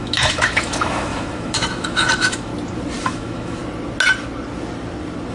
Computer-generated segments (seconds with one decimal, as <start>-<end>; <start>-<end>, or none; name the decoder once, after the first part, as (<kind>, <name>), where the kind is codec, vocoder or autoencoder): 0.0-2.5 (autoencoder, DAC-VAE); 3.0-3.6